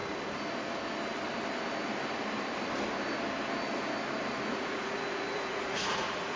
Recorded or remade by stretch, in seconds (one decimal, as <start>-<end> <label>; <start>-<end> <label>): 0.0-4.5 recorded; 4.5-6.4 remade